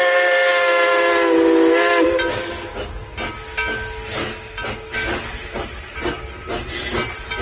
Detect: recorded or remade recorded